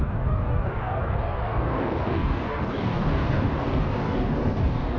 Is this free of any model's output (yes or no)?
no